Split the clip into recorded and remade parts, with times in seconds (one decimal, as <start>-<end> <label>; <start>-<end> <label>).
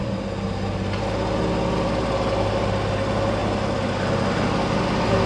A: 0.0-5.3 recorded